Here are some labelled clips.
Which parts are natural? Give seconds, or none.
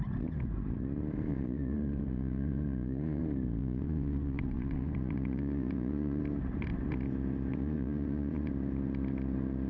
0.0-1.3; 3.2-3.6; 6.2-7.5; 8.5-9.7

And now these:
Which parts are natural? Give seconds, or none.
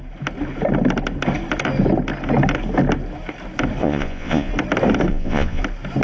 0.0-3.8; 4.5-5.1; 5.6-6.0